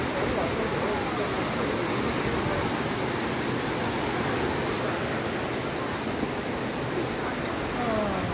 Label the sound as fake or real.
real